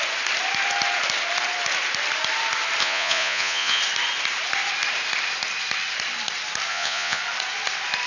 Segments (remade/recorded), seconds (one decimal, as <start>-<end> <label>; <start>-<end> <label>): 0.0-2.8 recorded; 2.8-3.8 remade; 3.8-6.7 recorded; 6.7-7.2 remade; 7.2-8.1 recorded